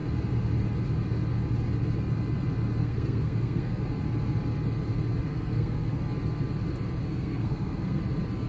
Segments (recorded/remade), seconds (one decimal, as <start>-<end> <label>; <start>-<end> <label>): 0.0-2.8 recorded; 2.8-3.8 remade; 3.8-5.3 recorded; 5.3-6.0 remade; 6.0-7.0 recorded; 7.0-8.0 remade; 8.0-8.5 recorded